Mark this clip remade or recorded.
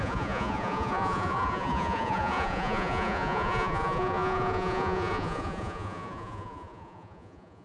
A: remade